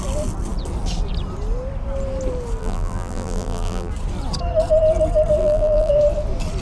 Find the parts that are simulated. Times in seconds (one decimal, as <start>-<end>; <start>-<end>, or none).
2.6-3.9; 5.4-5.9